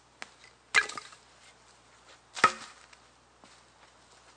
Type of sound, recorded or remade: recorded